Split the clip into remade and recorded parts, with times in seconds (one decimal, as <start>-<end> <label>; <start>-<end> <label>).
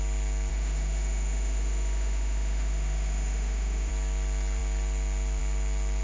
0.0-0.5 recorded; 0.5-3.9 remade; 3.9-6.0 recorded